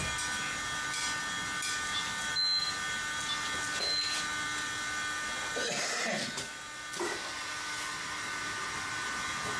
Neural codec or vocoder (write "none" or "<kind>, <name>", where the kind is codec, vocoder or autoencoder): none